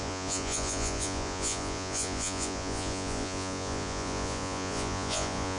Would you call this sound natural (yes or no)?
no